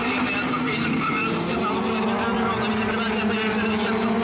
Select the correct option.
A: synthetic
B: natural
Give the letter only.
B